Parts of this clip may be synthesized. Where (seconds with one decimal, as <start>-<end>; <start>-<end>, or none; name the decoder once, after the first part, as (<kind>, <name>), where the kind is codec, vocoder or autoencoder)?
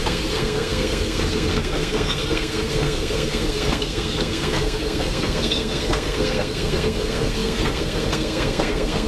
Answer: 0.0-9.1 (codec, SNAC)